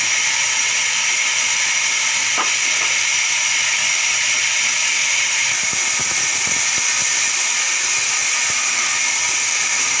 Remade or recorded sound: recorded